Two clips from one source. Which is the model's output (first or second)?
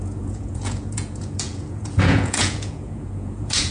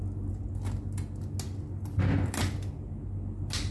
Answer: first